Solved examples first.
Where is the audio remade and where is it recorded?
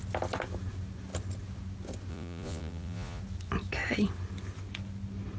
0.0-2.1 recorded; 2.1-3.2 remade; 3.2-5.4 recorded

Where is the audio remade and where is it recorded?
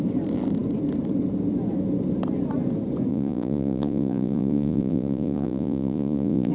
0.0-3.1 recorded; 3.1-6.5 remade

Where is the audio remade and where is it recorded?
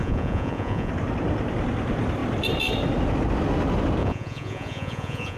0.0-0.9 remade; 0.9-4.0 recorded; 4.0-5.4 remade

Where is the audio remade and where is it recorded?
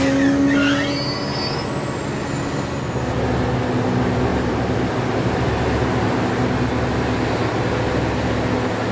0.0-4.3 recorded; 4.3-5.5 remade; 5.5-8.9 recorded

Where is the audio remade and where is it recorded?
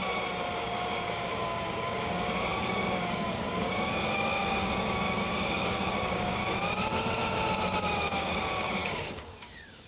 0.0-0.6 recorded; 0.6-6.4 remade; 6.4-7.8 recorded; 7.8-9.9 remade